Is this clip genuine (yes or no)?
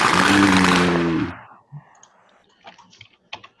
yes